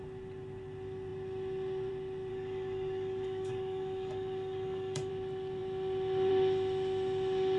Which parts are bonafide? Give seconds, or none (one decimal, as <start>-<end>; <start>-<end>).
0.0-2.3; 5.1-7.6

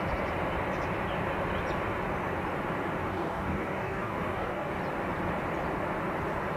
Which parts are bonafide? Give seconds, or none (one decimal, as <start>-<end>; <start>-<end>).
0.0-3.1; 4.7-6.6

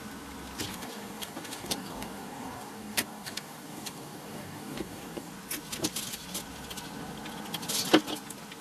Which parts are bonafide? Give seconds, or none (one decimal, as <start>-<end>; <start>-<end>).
0.0-0.7; 5.3-8.6

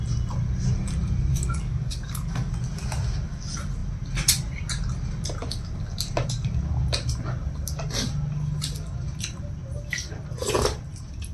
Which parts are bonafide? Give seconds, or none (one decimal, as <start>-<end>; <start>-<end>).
0.0-1.3; 2.5-11.3

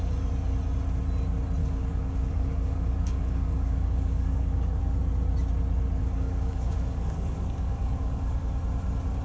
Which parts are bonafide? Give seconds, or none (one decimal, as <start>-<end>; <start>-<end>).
0.0-1.6; 4.8-6.0; 8.6-9.2

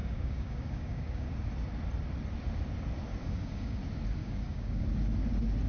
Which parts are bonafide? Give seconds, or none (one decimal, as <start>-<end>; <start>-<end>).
1.3-3.2; 3.8-4.2; 4.8-5.7

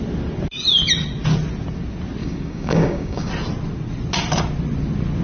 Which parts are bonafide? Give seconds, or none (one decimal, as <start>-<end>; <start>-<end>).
0.0-2.2; 3.3-5.2